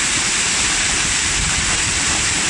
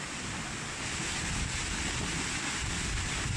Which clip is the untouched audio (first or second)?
second